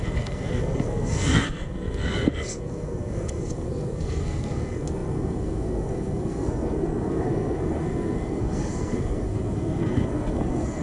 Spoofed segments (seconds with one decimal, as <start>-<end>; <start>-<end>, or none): 0.0-10.8